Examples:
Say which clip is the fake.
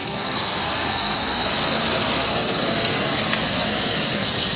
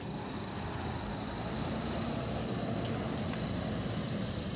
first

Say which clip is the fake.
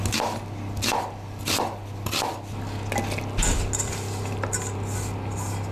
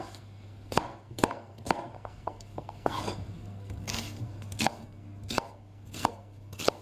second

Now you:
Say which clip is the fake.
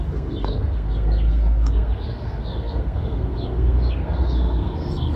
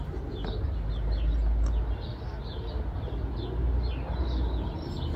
first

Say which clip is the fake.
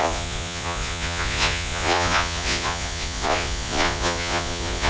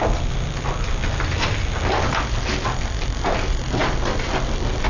first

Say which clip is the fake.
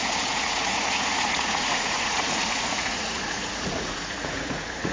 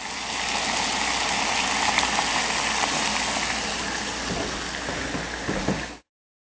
first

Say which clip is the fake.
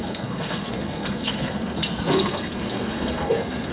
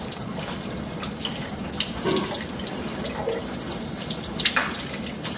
first